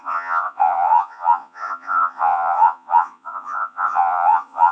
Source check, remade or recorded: remade